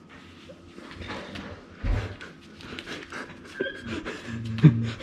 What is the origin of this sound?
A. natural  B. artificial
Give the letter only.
A